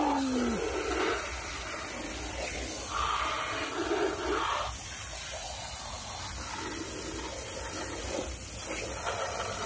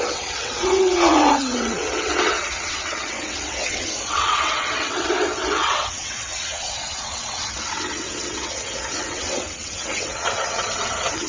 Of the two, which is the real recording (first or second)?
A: first